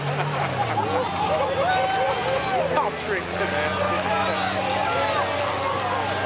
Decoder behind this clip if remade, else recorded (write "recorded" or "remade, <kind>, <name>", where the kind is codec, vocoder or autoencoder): recorded